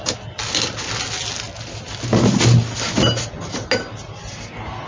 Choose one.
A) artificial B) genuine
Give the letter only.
B